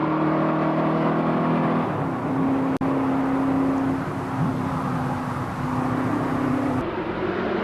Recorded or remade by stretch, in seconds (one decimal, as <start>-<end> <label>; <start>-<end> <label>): 0.0-7.6 recorded